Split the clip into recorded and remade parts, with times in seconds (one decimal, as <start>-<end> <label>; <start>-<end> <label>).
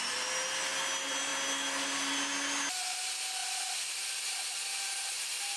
0.0-3.4 recorded; 3.4-4.1 remade; 4.1-5.6 recorded